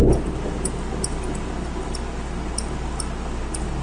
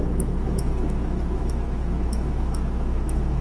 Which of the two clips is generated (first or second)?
second